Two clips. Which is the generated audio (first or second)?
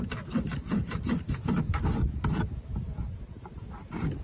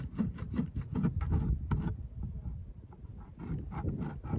first